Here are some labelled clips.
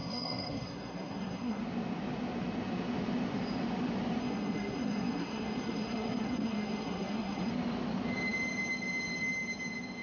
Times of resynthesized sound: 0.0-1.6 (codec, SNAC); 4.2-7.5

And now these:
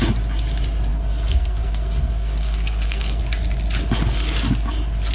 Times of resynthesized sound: 0.9-3.2 (codec, SNAC)

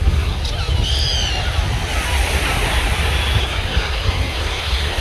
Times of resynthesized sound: 0.0-0.4 (codec, SNAC); 3.4-5.0

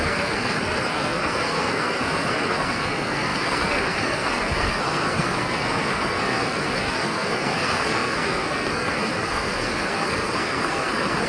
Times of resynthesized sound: 0.0-11.3 (codec, SNAC)

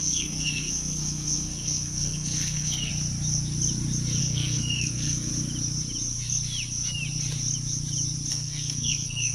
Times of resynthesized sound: 0.0-2.9 (codec, SNAC); 4.2-5.3; 8.3-9.3

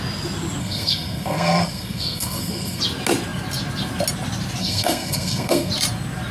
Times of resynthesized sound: 0.6-2.8 (codec, SNAC); 4.6-5.7

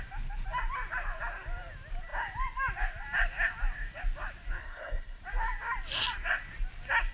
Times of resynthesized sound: 4.6-5.2 (codec, SNAC)